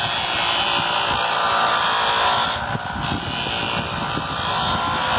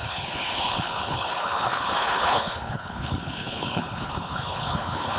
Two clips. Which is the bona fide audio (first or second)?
first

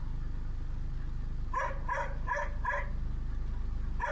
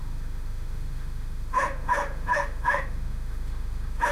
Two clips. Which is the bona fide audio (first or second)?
first